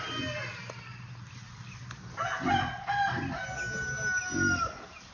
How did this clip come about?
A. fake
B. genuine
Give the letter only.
B